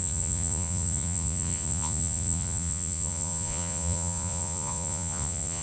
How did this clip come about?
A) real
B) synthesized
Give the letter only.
B